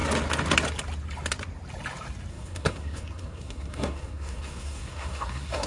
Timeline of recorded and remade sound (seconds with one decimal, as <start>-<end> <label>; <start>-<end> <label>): 0.0-2.3 recorded; 2.3-5.7 remade